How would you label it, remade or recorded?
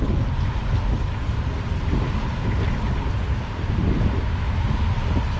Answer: recorded